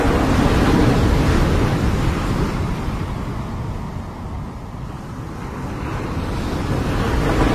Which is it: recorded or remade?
recorded